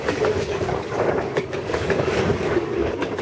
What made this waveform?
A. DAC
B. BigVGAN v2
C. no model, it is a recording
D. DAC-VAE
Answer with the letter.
A